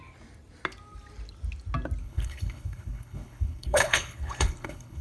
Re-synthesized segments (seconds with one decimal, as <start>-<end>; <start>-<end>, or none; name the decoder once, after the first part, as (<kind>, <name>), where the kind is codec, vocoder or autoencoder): 2.0-5.0 (codec, HILCodec)